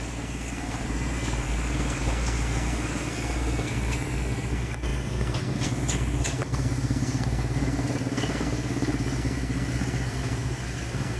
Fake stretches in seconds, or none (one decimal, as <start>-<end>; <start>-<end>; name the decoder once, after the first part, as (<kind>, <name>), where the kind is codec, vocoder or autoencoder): 0.0-11.2 (codec, SNAC)

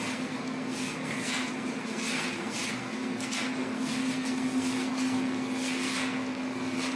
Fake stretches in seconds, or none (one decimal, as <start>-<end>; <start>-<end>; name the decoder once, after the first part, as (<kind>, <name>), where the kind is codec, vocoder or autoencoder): 0.0-7.0 (codec, SNAC)